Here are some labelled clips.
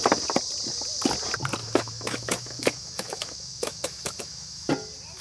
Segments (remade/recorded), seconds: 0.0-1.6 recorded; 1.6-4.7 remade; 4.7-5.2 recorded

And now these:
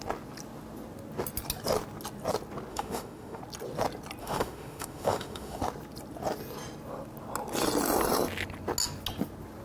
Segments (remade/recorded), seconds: 0.0-2.7 recorded; 2.7-3.4 remade; 3.4-4.2 recorded; 4.2-5.6 remade; 5.6-9.6 recorded